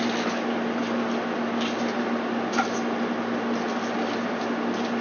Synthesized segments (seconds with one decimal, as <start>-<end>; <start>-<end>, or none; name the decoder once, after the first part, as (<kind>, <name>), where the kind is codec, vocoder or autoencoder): none